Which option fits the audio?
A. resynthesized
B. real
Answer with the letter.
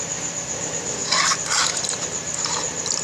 A